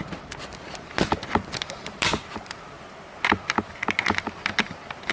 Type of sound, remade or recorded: recorded